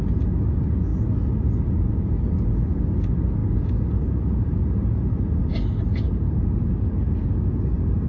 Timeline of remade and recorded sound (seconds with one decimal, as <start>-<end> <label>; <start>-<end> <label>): 0.0-8.1 recorded